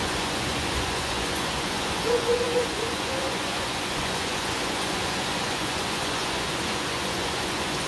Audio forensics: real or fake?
fake